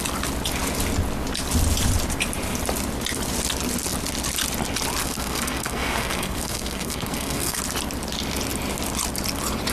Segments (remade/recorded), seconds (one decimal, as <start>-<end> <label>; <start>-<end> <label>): 0.0-5.0 recorded; 5.0-7.6 remade; 7.6-9.7 recorded